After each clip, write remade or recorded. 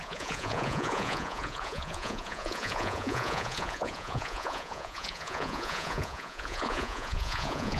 remade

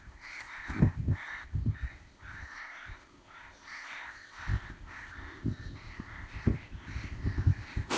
remade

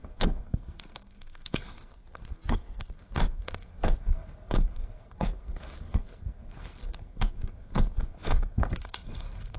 remade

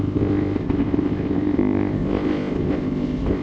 remade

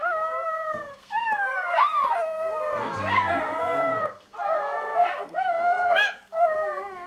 remade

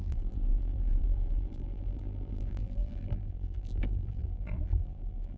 remade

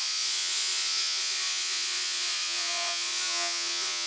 remade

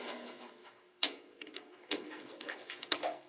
remade